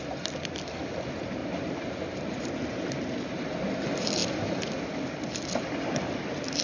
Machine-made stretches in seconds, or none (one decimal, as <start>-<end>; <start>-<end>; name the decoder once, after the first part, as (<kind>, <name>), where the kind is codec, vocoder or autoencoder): 1.4-3.6 (vocoder, BigVGAN v2)